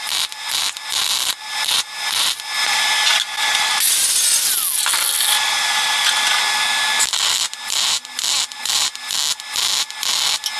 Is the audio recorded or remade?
recorded